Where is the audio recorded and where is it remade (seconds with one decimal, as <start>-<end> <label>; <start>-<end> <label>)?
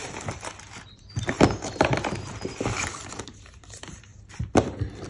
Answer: 0.0-3.1 recorded; 3.1-4.1 remade; 4.1-5.1 recorded